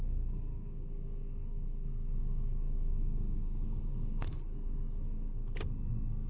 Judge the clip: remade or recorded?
remade